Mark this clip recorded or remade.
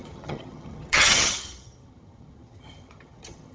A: remade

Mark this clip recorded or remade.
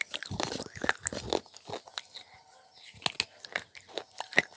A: recorded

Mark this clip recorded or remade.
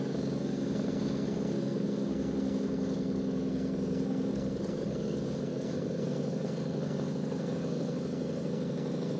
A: remade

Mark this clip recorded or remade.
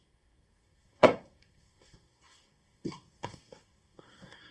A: remade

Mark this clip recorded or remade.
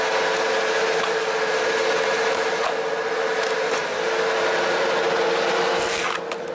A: recorded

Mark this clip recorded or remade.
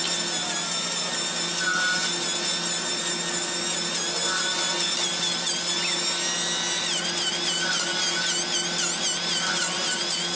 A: recorded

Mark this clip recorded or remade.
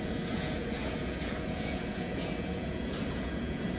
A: remade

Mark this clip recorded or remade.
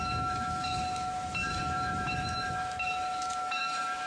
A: remade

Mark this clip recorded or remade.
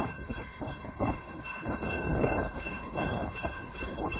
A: remade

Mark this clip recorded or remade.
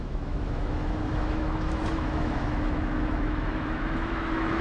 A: remade